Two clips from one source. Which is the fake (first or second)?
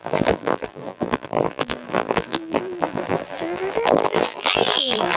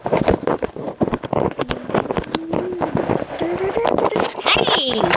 first